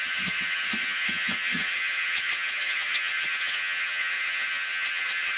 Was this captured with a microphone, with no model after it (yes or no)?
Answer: no